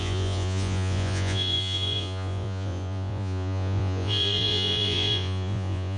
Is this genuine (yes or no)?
no